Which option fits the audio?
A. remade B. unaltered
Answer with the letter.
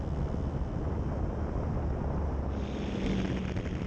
B